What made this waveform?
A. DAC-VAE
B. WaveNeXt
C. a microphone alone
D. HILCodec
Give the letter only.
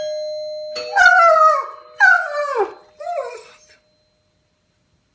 C